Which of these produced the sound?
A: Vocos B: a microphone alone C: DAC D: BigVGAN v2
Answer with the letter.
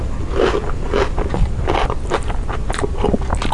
B